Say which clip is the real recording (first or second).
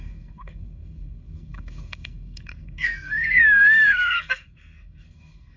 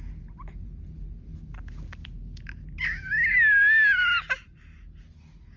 second